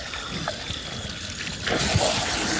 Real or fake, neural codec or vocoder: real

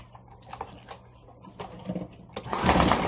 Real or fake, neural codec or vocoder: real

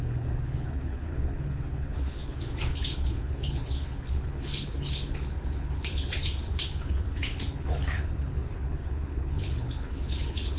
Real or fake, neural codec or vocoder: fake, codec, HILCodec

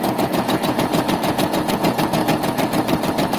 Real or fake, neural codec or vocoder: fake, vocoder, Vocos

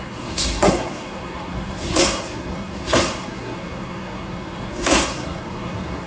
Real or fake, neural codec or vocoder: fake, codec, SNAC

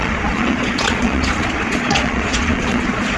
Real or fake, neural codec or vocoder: fake, vocoder, Vocos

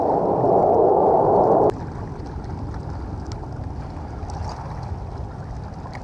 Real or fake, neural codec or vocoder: real